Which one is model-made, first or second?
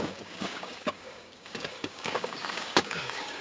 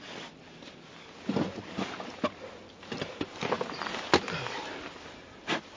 first